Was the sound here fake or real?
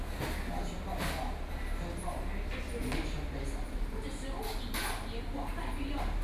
real